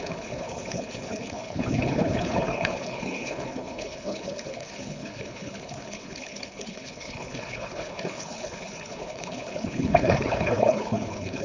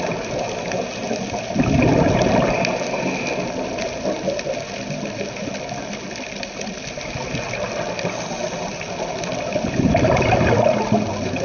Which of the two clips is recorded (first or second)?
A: second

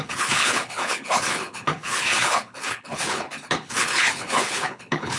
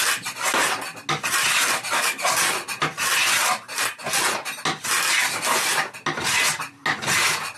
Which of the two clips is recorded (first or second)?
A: second